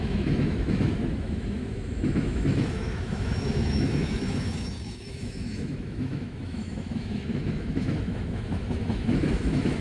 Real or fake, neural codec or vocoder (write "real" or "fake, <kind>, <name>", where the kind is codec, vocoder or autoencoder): fake, autoencoder, DAC-VAE